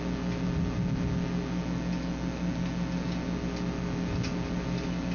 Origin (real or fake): real